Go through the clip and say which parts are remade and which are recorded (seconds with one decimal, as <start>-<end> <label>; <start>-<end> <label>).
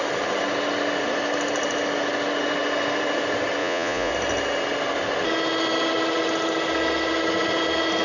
0.0-3.6 recorded; 3.6-4.1 remade; 4.1-8.0 recorded